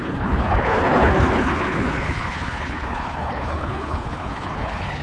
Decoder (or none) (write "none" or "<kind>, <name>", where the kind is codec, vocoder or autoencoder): codec, HILCodec